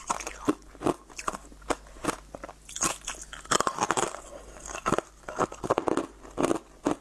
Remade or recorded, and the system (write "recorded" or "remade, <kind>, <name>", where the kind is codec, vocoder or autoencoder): recorded